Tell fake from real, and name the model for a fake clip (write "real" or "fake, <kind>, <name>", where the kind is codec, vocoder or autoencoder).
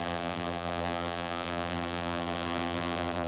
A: fake, vocoder, BigVGAN v2